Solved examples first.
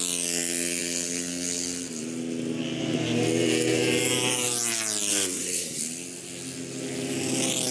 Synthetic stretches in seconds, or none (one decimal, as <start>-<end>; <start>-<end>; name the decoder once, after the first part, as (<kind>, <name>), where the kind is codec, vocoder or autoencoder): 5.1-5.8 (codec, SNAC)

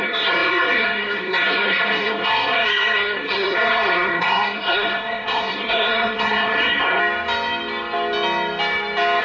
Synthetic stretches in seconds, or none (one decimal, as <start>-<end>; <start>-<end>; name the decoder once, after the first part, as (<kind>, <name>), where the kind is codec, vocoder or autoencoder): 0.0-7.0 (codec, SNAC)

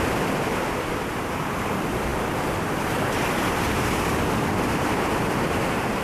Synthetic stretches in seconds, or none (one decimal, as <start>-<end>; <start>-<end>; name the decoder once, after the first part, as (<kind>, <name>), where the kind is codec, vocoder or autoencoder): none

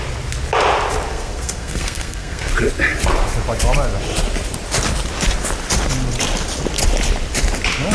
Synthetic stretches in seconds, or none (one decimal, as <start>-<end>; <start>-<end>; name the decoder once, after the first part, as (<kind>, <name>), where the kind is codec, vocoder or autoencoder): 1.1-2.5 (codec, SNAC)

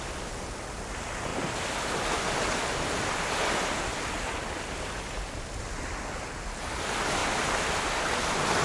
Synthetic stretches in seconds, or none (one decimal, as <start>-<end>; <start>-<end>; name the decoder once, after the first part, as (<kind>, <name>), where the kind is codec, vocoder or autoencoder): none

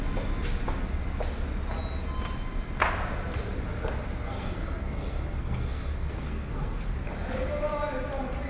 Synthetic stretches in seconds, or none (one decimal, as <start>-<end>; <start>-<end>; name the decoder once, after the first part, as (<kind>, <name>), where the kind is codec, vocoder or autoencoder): 4.3-6.9 (codec, SNAC)

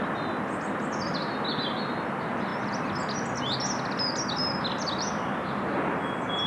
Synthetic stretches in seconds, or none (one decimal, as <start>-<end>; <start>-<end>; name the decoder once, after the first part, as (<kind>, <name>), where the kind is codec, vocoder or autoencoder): none

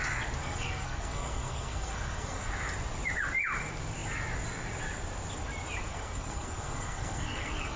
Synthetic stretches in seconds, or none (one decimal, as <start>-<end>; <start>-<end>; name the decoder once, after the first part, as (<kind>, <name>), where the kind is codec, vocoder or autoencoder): 0.4-2.5 (codec, SNAC); 5.9-7.8